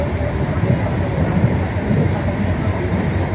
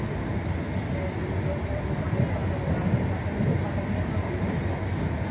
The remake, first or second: first